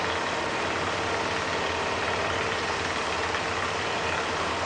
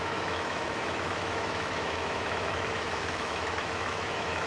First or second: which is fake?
second